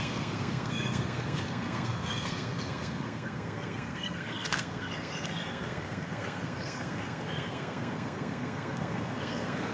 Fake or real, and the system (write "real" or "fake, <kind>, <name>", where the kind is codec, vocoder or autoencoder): fake, codec, SNAC